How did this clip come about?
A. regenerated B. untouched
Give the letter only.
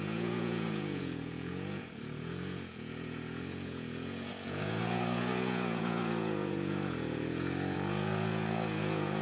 A